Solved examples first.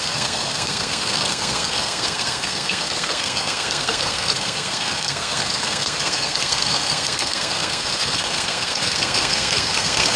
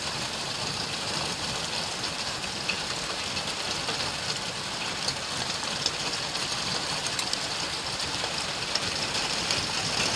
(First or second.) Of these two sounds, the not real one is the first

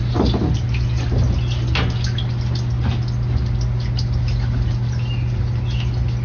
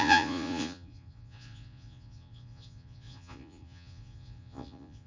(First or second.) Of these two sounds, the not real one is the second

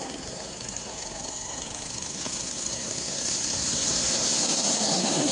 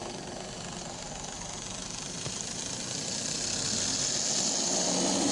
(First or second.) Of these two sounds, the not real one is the first